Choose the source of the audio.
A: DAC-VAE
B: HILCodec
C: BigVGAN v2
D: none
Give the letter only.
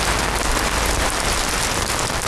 D